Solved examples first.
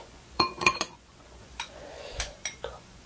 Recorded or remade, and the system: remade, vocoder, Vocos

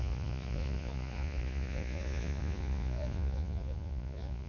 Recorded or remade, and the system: remade, vocoder, Vocos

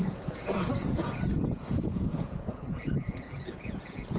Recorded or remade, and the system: remade, vocoder, Vocos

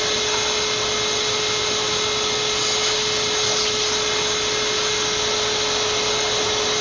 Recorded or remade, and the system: recorded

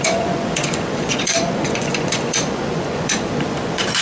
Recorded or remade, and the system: remade, vocoder, Vocos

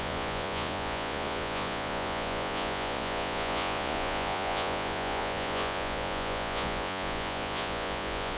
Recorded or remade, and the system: remade, vocoder, Vocos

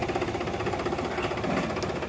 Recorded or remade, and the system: recorded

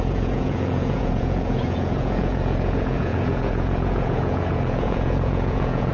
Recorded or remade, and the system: remade, vocoder, Vocos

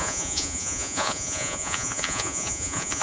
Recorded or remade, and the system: remade, vocoder, Vocos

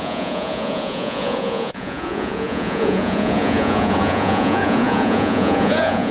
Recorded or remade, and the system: remade, vocoder, Vocos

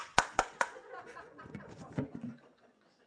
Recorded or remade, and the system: remade, vocoder, Vocos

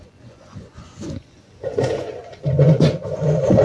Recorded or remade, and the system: remade, vocoder, Vocos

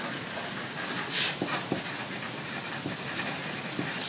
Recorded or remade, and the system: recorded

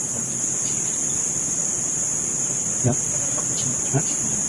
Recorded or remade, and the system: recorded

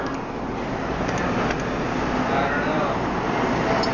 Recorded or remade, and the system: recorded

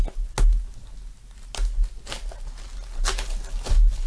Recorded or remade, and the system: recorded